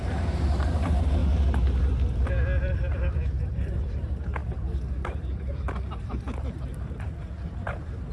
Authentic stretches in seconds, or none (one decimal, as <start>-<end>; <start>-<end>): 1.2-2.6; 4.4-5.2